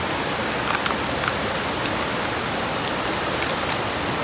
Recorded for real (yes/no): yes